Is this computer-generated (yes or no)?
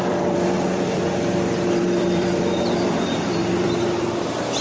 yes